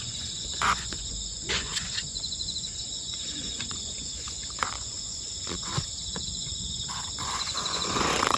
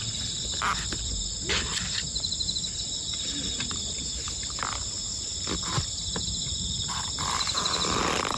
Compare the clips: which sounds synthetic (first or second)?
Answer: first